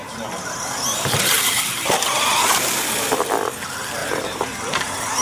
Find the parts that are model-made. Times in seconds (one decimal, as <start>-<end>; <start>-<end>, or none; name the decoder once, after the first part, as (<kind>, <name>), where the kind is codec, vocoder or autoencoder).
0.0-1.6 (vocoder, BigVGAN v2); 4.0-5.2